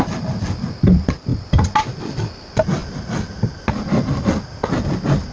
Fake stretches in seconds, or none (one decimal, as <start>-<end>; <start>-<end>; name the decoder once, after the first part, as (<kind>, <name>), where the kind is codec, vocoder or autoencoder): none